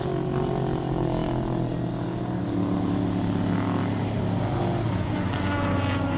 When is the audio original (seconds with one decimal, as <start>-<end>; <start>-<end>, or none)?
0.0-6.2